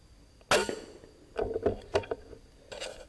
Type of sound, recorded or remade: recorded